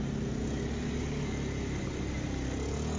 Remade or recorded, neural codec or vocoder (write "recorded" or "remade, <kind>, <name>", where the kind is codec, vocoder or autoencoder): recorded